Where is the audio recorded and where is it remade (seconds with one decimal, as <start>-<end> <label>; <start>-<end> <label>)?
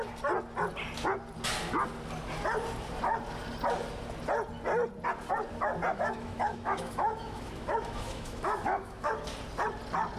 0.0-5.9 recorded; 5.9-9.1 remade; 9.1-10.2 recorded